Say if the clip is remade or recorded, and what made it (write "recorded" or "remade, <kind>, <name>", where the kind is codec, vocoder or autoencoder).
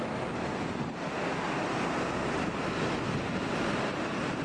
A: recorded